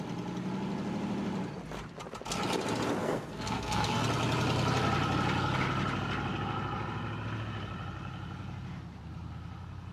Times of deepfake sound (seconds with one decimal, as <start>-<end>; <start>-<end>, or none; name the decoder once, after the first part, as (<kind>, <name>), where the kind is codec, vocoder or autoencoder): 3.0-4.0 (codec, SNAC)